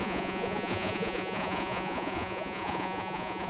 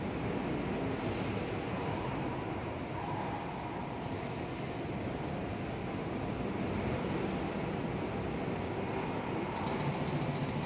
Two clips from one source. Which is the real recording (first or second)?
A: second